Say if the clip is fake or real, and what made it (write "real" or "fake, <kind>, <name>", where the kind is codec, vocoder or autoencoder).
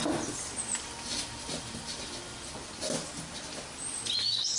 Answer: real